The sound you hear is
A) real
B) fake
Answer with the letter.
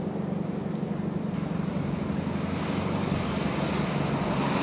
A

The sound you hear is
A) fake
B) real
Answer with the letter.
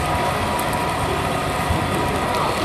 B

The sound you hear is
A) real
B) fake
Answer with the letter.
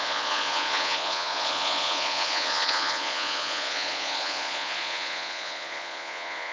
B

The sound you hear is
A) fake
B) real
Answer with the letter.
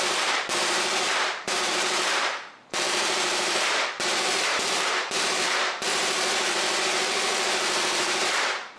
A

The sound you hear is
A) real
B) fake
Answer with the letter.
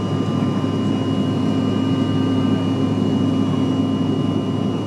A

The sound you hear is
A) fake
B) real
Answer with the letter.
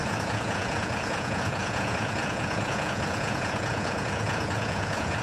A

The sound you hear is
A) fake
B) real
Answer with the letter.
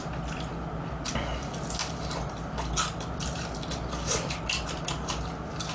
B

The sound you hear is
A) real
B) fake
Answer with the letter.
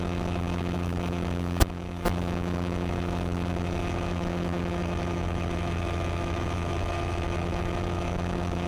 B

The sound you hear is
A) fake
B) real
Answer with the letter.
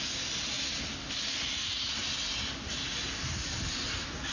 B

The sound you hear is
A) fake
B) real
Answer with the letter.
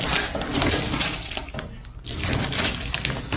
B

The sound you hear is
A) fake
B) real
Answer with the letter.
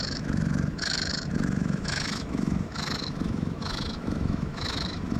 A